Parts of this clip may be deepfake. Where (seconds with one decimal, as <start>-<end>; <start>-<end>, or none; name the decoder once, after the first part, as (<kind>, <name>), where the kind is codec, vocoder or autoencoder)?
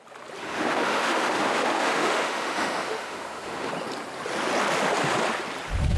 0.4-3.7 (autoencoder, DAC-VAE)